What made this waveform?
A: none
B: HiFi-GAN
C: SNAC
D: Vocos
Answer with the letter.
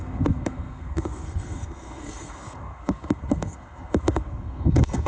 C